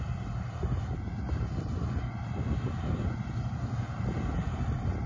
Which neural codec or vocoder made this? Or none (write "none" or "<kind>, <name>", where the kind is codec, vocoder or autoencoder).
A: none